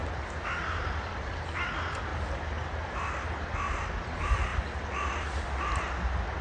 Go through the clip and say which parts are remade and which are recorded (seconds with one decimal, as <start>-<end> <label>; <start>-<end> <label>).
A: 0.0-6.4 recorded